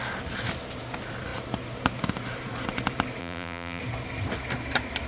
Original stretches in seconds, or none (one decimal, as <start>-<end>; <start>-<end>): 0.0-3.2; 3.8-5.1